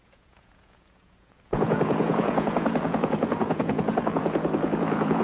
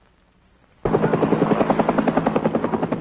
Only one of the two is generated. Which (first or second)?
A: first